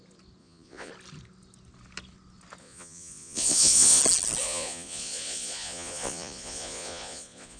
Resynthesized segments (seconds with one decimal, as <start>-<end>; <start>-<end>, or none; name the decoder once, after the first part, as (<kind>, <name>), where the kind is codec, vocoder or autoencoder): 0.4-0.9 (vocoder, Vocos); 2.6-4.0; 4.4-7.6